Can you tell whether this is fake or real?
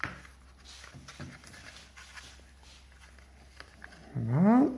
real